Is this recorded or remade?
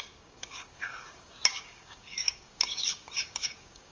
remade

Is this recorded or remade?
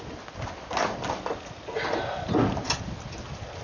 recorded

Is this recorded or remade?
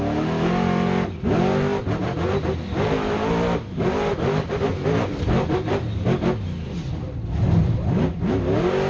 recorded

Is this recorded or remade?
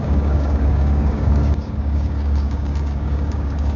remade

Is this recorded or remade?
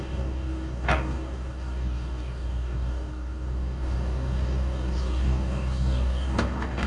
remade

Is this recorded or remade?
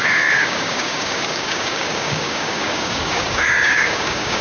remade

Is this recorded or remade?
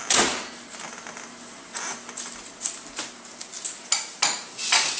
recorded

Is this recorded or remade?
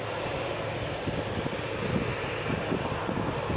recorded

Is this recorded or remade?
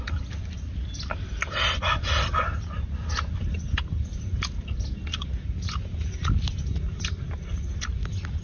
recorded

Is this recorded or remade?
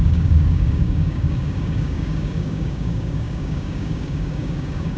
remade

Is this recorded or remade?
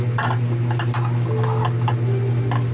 recorded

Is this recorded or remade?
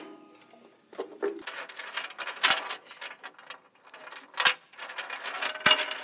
recorded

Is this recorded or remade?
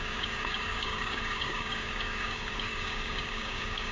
remade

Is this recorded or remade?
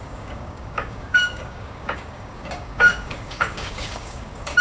remade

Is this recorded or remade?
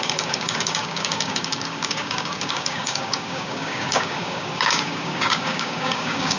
remade